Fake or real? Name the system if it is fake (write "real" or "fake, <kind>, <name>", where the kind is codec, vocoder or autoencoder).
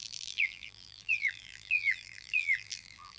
fake, vocoder, BigVGAN v2